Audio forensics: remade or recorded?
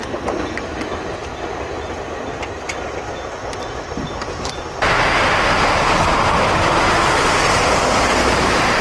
recorded